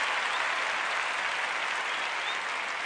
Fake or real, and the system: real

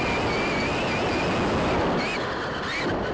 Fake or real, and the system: real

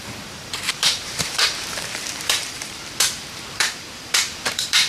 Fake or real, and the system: fake, vocoder, BigVGAN v2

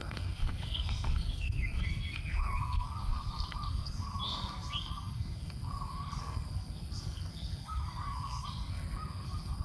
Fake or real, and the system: fake, codec, SNAC